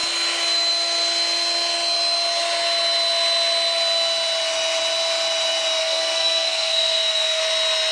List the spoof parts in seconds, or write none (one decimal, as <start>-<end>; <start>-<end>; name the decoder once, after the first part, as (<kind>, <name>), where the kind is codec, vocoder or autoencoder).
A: 5.8-7.4 (codec, SNAC)